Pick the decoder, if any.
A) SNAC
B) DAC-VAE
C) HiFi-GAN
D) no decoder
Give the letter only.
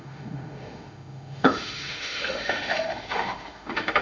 B